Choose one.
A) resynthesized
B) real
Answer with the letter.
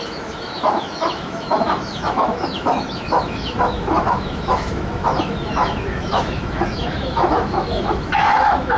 A